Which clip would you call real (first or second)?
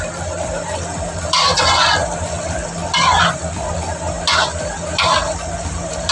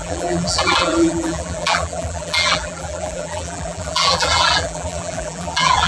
first